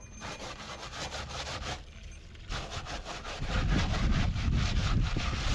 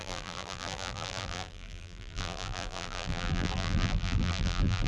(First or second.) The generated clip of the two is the second